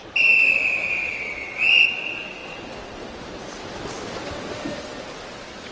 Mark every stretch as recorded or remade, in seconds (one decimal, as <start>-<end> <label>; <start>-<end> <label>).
0.0-0.9 recorded; 0.9-1.7 remade; 1.7-5.7 recorded